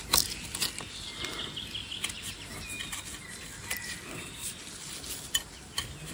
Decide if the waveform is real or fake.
real